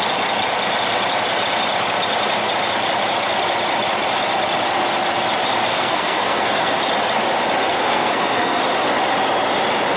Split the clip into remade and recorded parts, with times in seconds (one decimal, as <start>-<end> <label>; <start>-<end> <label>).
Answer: 0.0-5.7 recorded; 5.7-6.8 remade; 6.8-7.7 recorded; 7.7-8.6 remade; 8.6-10.0 recorded